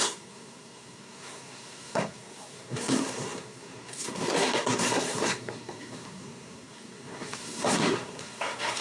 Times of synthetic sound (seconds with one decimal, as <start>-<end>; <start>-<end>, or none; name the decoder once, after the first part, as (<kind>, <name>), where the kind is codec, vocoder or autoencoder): 0.0-8.8 (codec, SNAC)